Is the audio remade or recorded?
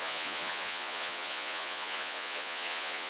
remade